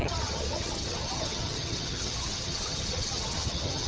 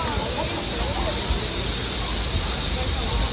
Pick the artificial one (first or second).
first